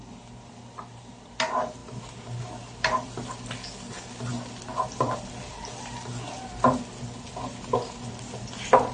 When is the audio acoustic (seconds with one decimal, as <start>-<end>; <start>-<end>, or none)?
0.0-8.9